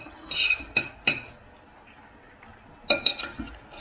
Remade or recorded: recorded